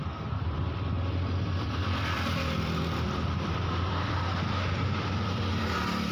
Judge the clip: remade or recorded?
remade